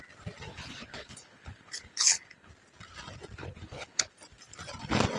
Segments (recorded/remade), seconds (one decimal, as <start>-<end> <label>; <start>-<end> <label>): 0.0-0.5 recorded; 0.5-2.5 remade; 2.5-3.4 recorded; 3.4-4.1 remade; 4.1-5.2 recorded